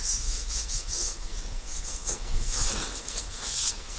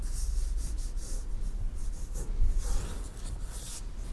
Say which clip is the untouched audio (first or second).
second